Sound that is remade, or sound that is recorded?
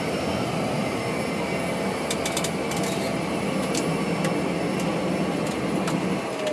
recorded